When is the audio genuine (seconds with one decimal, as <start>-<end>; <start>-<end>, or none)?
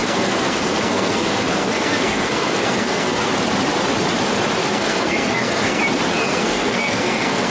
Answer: 3.3-4.6; 5.8-6.2